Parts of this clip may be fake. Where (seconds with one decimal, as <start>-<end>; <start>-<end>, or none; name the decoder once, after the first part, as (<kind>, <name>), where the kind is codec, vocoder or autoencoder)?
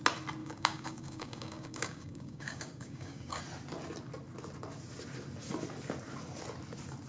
0.4-3.4 (codec, DAC)